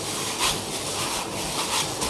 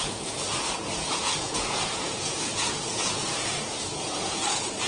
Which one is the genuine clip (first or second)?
first